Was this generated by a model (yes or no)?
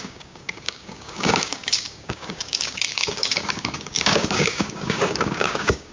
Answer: yes